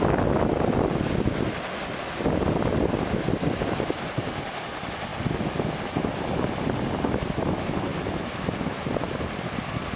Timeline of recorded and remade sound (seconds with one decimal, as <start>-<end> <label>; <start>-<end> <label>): 0.0-10.0 recorded